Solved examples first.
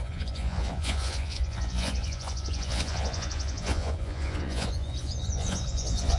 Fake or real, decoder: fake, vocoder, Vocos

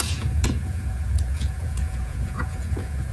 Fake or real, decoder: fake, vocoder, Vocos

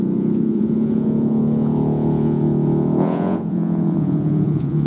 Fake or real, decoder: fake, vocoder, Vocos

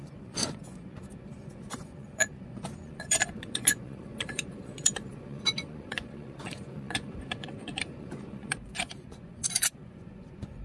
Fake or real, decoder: fake, vocoder, Vocos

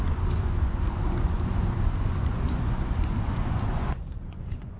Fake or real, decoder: fake, vocoder, Vocos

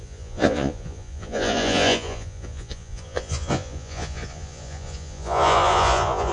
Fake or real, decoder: fake, vocoder, Vocos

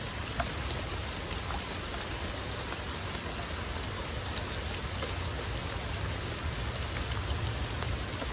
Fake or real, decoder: real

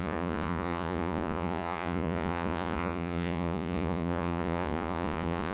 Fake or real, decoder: fake, vocoder, Vocos